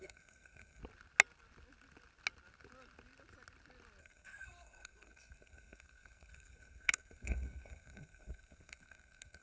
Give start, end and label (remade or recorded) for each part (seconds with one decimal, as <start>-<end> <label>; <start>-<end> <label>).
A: 0.0-0.8 remade; 0.8-4.0 recorded; 4.0-9.4 remade